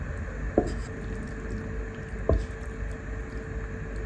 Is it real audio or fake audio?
real